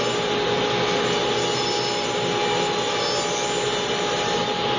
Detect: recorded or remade recorded